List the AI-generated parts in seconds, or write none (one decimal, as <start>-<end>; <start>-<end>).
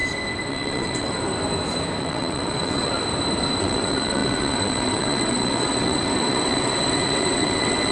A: 0.5-1.2; 2.0-3.0; 3.6-7.9